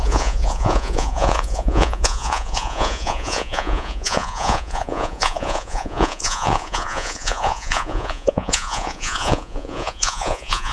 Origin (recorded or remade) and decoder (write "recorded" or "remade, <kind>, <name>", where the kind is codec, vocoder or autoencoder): remade, vocoder, Vocos